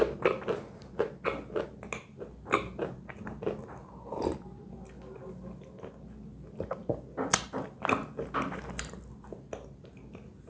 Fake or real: real